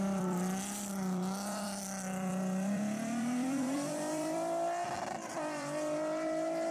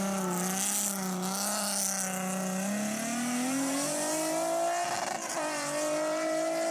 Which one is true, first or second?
second